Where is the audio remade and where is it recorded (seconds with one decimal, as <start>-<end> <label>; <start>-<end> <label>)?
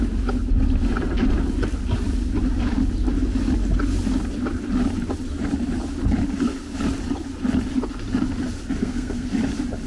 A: 0.0-8.8 recorded; 8.8-9.3 remade; 9.3-9.9 recorded